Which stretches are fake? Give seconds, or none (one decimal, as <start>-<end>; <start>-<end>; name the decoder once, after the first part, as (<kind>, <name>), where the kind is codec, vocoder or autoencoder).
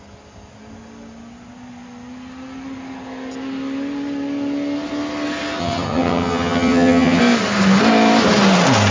5.6-7.2 (vocoder, HiFi-GAN)